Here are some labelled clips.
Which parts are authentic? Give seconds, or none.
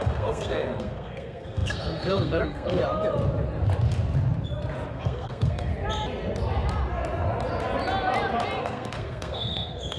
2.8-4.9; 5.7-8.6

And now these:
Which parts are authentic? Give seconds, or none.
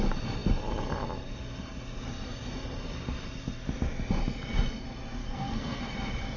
0.0-5.2; 5.8-6.4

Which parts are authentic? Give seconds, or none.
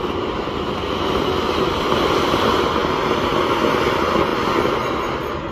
0.0-5.5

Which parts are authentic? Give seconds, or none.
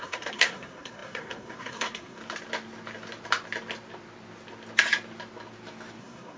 2.2-6.0